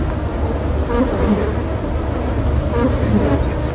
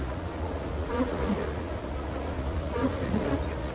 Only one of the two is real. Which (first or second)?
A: first